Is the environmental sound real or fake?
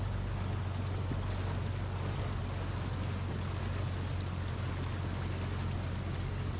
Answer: real